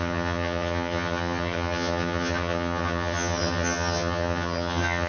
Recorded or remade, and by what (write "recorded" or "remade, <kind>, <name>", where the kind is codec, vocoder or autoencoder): remade, vocoder, HiFi-GAN